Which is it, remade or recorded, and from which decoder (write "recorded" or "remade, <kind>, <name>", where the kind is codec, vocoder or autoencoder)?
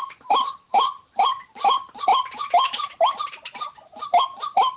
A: recorded